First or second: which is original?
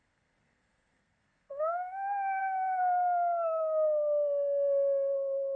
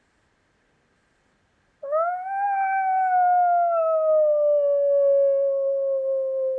second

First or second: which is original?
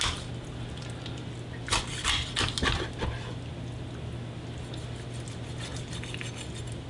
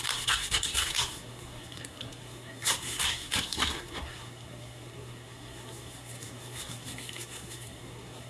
first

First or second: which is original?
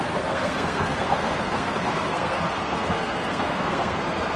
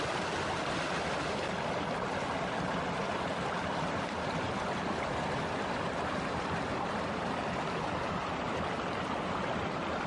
second